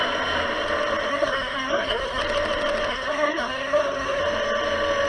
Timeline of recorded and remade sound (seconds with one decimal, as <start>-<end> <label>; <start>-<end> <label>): 0.0-1.1 recorded; 1.1-2.2 remade; 2.2-2.9 recorded; 2.9-4.2 remade; 4.2-5.1 recorded